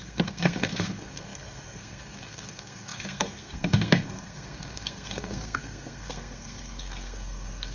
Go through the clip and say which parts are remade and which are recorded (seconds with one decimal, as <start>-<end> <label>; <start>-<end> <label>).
0.0-7.7 remade